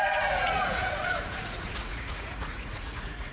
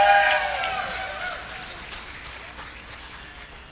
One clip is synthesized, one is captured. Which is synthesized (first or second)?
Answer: first